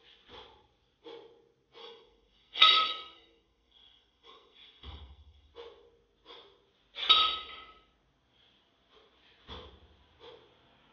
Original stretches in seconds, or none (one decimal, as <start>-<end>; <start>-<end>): 0.0-1.8; 5.5-10.9